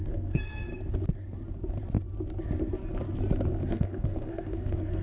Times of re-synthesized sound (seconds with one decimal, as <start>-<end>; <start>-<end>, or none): 0.0-0.7; 3.7-5.0